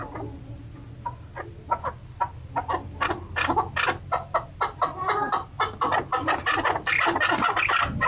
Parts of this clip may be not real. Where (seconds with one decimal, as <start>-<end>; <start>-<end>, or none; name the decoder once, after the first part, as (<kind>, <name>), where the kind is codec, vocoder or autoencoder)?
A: 2.0-5.3 (vocoder, BigVGAN v2); 6.1-6.7

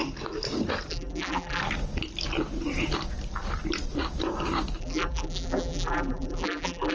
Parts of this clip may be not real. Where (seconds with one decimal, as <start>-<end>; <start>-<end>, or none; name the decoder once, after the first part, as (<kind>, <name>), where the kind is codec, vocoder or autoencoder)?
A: 0.9-1.6 (vocoder, BigVGAN v2); 4.8-6.9

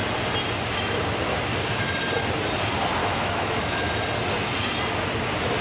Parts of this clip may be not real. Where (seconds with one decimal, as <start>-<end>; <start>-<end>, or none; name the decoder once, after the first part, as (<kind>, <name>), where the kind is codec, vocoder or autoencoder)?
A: 3.0-3.9 (autoencoder, DAC-VAE)

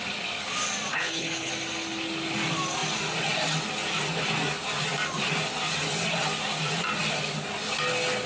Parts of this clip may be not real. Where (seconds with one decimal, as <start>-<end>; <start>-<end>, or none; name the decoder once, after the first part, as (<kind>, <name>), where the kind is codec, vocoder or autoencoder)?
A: 0.9-1.5 (codec, HILCodec)

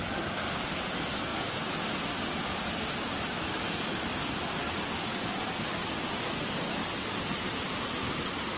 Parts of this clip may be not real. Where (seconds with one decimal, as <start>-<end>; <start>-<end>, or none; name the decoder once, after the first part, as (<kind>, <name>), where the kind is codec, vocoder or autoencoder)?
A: 0.0-1.3 (vocoder, BigVGAN v2); 3.1-5.8

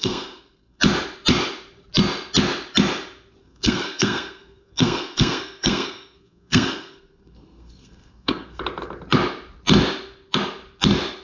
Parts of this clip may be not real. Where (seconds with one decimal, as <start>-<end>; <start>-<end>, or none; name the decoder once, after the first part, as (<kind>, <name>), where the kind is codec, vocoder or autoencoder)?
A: 0.0-0.8 (codec, SNAC); 3.4-8.6

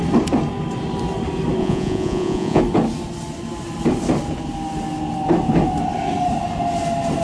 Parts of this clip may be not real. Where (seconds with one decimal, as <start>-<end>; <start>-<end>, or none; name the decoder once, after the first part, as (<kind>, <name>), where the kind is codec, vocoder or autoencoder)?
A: 1.6-2.6 (vocoder, Vocos)